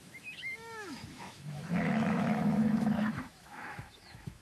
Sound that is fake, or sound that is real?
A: fake